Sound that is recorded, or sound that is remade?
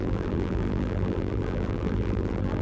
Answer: remade